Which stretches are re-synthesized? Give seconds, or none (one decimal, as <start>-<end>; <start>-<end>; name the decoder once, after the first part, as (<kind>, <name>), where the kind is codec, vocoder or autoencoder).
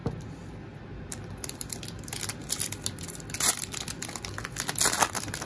none